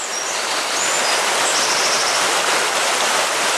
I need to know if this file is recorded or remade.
recorded